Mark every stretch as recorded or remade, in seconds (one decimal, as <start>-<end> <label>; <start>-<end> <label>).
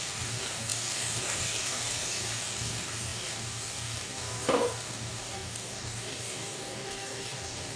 0.0-7.8 remade